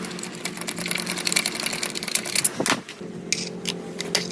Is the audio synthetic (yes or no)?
no